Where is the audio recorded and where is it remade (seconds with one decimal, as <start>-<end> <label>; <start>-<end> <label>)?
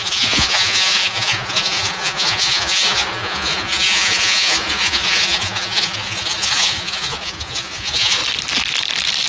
0.0-8.2 remade; 8.2-9.3 recorded